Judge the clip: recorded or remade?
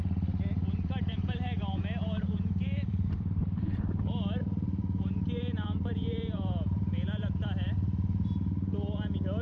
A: remade